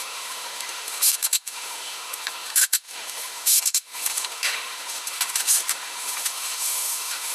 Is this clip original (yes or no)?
no